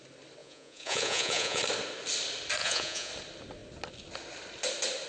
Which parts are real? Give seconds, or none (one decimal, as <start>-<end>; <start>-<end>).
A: 0.0-0.4; 1.6-2.6; 3.1-5.1